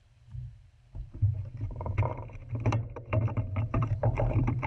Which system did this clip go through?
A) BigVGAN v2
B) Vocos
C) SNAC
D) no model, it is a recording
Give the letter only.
A